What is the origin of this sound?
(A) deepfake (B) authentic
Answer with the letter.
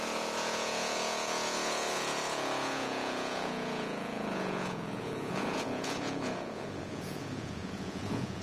A